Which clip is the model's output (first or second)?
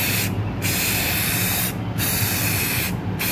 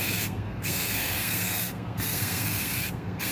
second